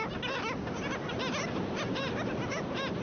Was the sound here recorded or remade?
recorded